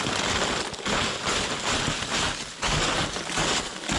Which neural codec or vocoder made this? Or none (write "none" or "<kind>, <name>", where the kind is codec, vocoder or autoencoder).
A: none